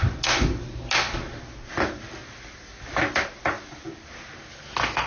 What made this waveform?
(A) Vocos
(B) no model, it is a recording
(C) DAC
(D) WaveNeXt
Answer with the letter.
B